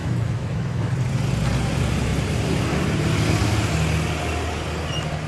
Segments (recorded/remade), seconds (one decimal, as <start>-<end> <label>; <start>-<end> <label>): 0.0-0.9 remade; 0.9-5.3 recorded